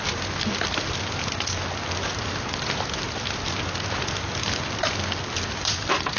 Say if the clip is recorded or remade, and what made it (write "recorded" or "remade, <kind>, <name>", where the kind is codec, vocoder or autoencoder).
recorded